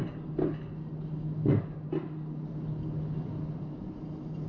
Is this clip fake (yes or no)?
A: no